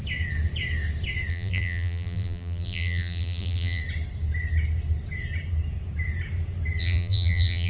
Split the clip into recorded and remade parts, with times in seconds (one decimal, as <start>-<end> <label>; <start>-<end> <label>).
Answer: 0.0-1.3 recorded; 1.3-3.8 remade; 3.8-6.8 recorded; 6.8-7.7 remade